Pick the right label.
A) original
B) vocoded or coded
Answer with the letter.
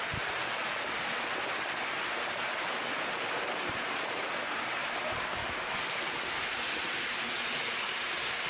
A